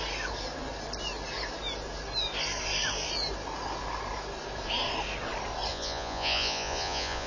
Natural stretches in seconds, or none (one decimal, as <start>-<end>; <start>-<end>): 0.0-5.7